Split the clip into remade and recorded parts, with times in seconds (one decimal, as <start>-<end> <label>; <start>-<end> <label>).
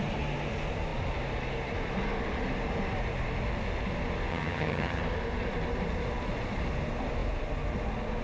0.0-4.3 recorded; 4.3-5.0 remade; 5.0-8.2 recorded